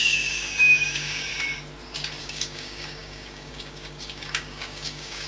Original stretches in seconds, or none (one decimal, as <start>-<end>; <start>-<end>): 1.3-2.2